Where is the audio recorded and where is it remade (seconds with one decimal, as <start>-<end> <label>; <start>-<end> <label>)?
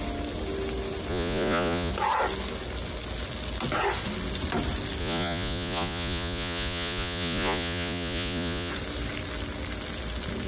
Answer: 0.0-1.1 recorded; 1.1-1.9 remade; 1.9-5.0 recorded; 5.0-8.7 remade; 8.7-10.5 recorded